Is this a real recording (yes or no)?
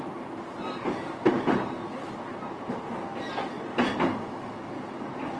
yes